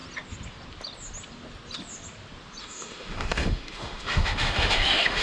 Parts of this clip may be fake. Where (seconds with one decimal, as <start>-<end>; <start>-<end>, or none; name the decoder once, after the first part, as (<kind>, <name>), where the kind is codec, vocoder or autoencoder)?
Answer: 2.6-5.2 (autoencoder, DAC-VAE)